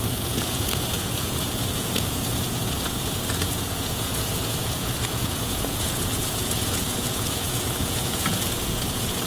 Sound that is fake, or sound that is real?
fake